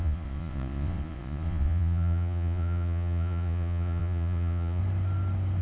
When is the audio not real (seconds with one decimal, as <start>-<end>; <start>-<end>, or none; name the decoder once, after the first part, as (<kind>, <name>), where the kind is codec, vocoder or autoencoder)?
0.0-4.8 (vocoder, Vocos)